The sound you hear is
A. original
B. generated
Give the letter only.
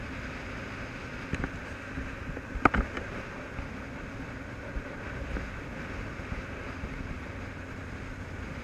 A